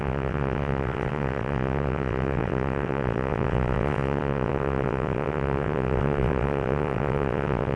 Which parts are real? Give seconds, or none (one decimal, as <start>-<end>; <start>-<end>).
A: none